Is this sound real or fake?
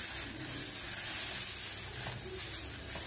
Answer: real